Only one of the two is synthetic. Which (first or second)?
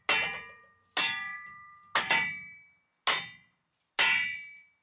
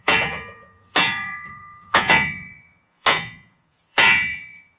second